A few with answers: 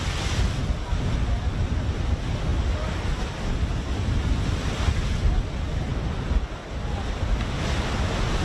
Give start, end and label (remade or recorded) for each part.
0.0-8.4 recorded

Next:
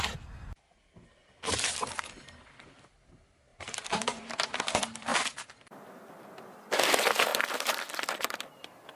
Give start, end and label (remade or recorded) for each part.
0.0-3.5 recorded; 3.5-4.3 remade; 4.3-9.0 recorded

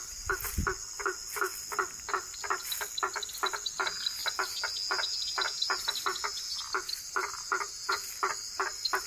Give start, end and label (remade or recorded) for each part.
0.0-9.1 recorded

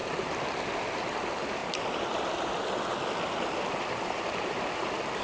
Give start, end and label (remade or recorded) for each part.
0.0-5.2 recorded

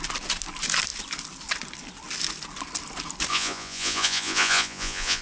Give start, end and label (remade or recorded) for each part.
0.0-3.3 recorded; 3.3-5.2 remade